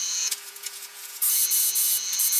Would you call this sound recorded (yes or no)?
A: no